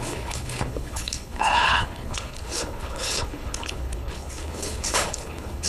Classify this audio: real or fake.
fake